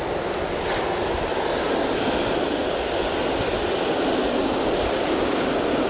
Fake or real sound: real